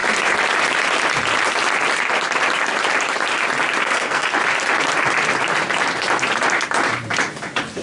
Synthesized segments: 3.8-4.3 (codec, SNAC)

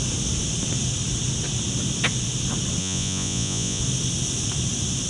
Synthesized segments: 2.8-3.8 (vocoder, Vocos)

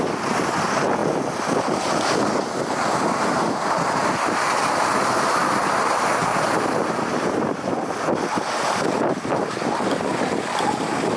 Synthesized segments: 6.2-7.8 (vocoder, BigVGAN v2)

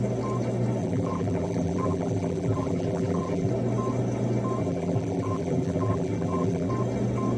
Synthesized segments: 0.8-3.5 (vocoder, BigVGAN v2); 4.6-6.7

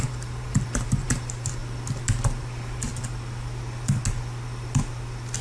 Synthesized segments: 0.0-1.6 (vocoder, BigVGAN v2); 2.4-2.9

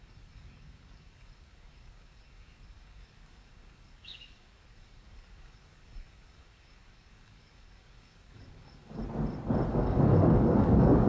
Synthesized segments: 0.0-9.0 (codec, DAC); 9.7-11.1

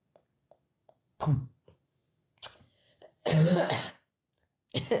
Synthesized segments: 0.8-1.6 (vocoder, WaveNeXt); 2.0-3.9

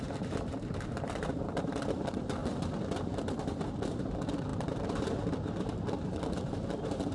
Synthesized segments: 0.0-2.4 (vocoder, BigVGAN v2); 3.3-7.1